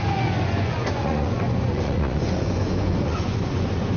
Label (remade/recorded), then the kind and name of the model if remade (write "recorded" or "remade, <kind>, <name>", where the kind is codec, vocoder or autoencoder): remade, vocoder, Vocos